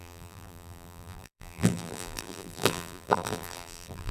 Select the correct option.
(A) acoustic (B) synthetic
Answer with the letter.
B